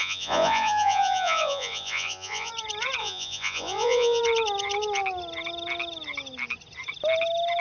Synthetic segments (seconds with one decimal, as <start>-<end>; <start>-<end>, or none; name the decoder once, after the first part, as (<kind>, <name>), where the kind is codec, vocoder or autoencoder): 0.0-2.5 (vocoder, Vocos); 3.0-4.2

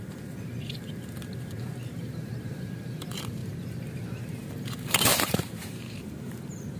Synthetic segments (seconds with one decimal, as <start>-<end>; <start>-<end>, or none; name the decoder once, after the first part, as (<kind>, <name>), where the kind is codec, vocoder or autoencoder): 0.0-6.8 (vocoder, BigVGAN v2)

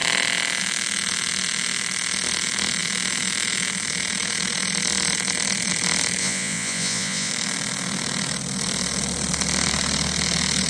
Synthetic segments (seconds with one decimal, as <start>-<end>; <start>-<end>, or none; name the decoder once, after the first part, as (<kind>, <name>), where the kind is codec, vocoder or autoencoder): 6.2-7.3 (vocoder, Vocos)